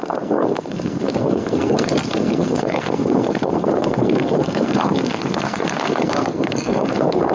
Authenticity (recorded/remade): remade